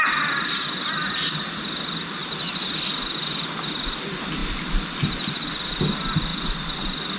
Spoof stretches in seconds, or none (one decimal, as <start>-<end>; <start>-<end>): none